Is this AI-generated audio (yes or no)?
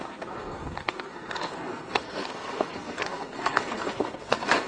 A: yes